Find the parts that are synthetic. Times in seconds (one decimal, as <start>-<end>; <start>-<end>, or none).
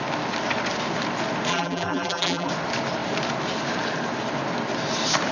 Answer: 1.5-2.5